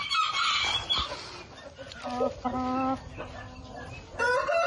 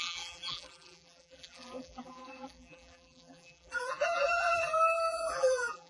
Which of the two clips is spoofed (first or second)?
second